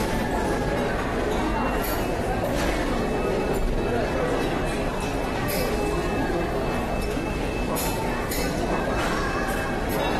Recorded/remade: recorded